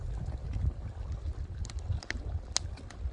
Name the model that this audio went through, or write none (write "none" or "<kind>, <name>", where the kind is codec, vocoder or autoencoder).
none